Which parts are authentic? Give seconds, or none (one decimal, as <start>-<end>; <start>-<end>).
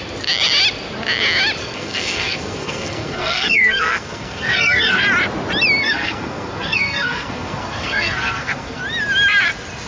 0.0-1.6; 5.0-5.8; 8.8-9.9